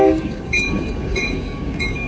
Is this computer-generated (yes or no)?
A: yes